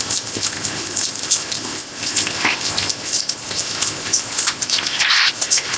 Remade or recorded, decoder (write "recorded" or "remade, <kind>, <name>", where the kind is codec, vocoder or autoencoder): remade, codec, ZipCodec